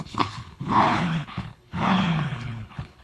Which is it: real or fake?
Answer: fake